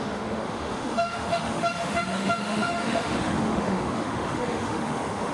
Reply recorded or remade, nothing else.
remade